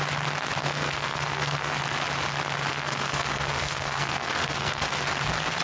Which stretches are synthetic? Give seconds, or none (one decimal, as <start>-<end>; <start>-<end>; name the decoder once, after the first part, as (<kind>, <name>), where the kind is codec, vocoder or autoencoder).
0.6-1.7 (codec, SNAC); 2.7-5.0